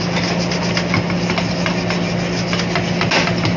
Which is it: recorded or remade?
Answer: recorded